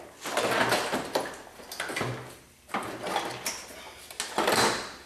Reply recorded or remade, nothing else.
recorded